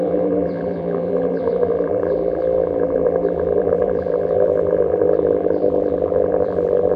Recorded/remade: remade